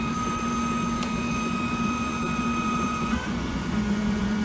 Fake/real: fake